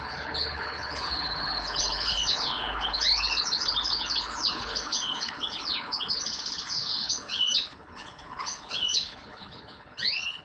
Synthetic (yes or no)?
yes